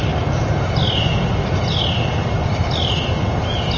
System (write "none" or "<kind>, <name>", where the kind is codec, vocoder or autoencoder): none